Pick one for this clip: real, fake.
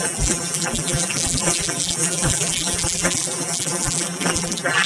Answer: fake